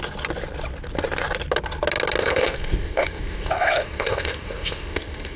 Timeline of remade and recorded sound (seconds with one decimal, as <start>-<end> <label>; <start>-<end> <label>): 0.0-2.2 recorded; 2.2-5.4 remade